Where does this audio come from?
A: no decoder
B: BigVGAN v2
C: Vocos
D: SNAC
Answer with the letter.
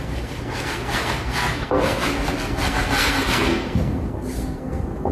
D